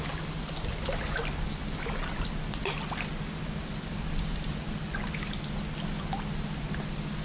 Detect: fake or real real